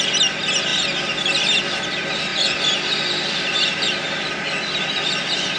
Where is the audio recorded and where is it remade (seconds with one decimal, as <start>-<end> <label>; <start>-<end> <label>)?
0.0-5.6 recorded